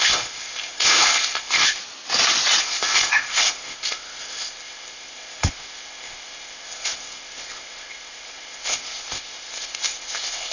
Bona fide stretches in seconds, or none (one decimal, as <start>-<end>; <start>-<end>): 1.8-2.6